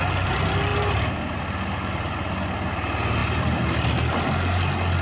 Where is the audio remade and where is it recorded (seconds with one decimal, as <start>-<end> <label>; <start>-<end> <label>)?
0.0-5.0 recorded